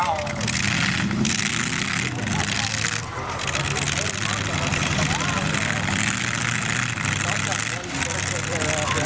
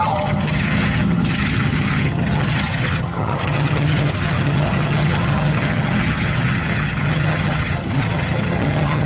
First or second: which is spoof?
second